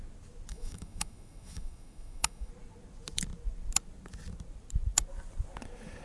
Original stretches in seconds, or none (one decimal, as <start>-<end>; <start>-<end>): 0.0-0.5; 2.5-6.0